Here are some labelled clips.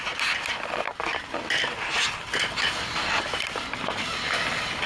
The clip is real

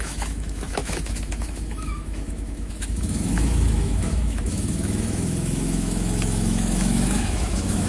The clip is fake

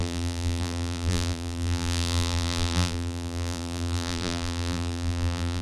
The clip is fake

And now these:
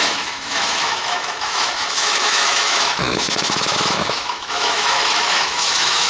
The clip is fake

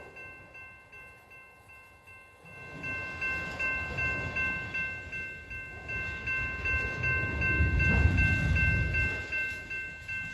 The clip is real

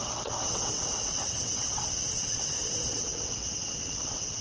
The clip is fake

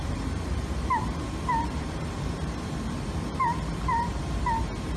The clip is fake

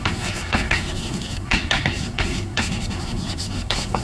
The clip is fake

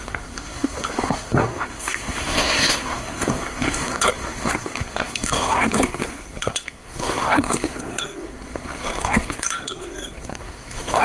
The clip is fake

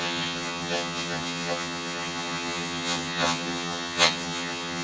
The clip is fake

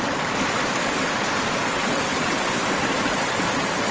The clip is real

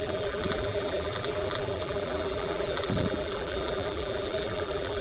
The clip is fake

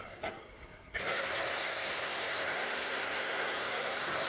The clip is fake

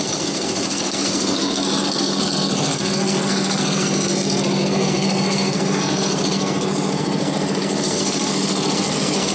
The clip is fake